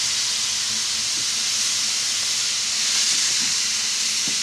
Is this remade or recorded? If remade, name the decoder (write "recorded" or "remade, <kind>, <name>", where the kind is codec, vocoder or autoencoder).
recorded